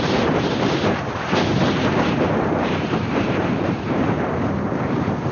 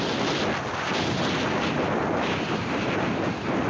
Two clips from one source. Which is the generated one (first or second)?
first